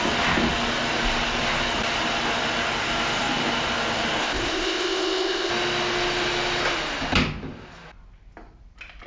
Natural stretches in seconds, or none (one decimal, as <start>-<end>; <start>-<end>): 0.0-4.2; 5.5-9.1